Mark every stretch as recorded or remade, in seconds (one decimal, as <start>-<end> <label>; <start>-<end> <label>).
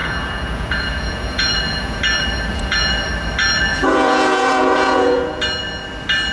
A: 0.0-2.0 remade; 2.0-2.5 recorded; 2.5-3.1 remade; 3.1-3.7 recorded; 3.7-5.4 remade; 5.4-6.3 recorded